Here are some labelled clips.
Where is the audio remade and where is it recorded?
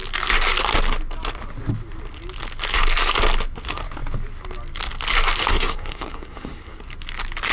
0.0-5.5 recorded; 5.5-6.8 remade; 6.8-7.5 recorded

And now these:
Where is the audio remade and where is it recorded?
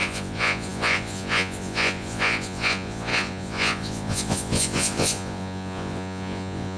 0.0-6.8 remade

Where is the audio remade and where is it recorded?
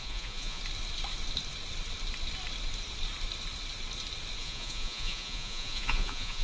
0.0-0.6 remade; 0.6-4.4 recorded; 4.4-6.4 remade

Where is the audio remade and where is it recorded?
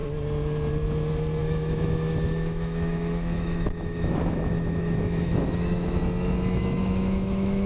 0.0-1.4 recorded; 1.4-6.0 remade; 6.0-6.6 recorded; 6.6-7.7 remade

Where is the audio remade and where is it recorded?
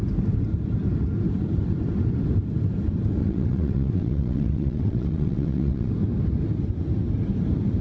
0.0-3.2 recorded; 3.2-5.9 remade; 5.9-7.8 recorded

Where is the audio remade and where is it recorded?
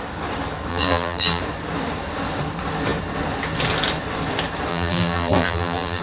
0.0-0.7 recorded; 0.7-1.4 remade; 1.4-4.7 recorded; 4.7-6.0 remade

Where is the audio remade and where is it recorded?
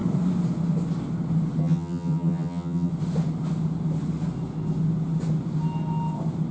0.0-1.6 recorded; 1.6-2.9 remade; 2.9-6.5 recorded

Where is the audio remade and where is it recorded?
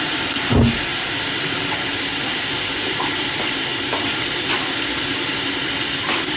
0.0-3.7 recorded; 3.7-4.3 remade; 4.3-6.4 recorded